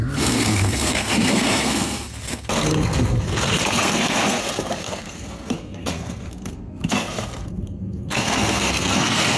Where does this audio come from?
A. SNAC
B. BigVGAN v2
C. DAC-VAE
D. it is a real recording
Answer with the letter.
A